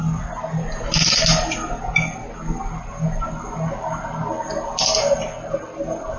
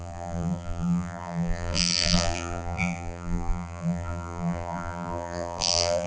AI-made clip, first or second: second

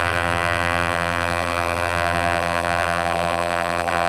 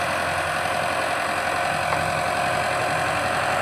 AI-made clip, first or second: first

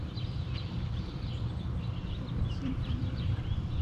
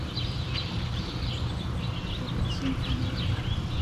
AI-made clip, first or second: first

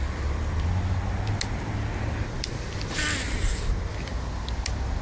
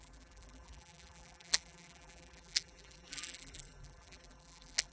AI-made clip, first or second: second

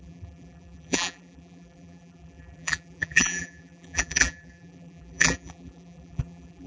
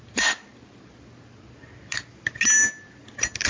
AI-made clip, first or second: first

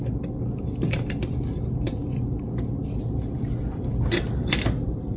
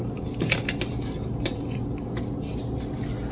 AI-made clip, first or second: first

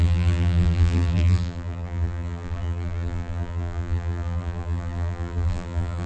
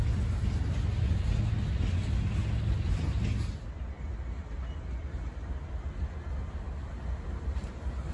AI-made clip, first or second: first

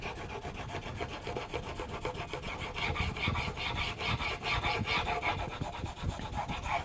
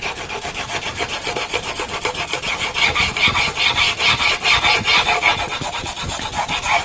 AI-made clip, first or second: second